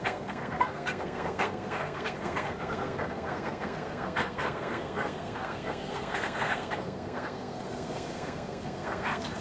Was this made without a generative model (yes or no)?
no